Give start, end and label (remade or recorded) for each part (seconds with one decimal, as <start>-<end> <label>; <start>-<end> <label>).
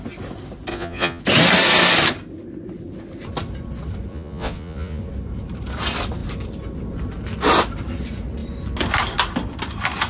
0.0-0.7 recorded; 0.7-1.2 remade; 1.2-4.1 recorded; 4.1-5.0 remade; 5.0-10.1 recorded